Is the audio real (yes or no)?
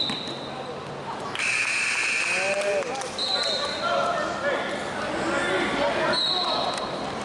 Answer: yes